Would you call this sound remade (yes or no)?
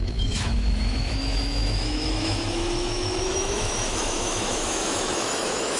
yes